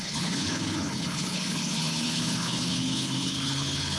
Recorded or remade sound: remade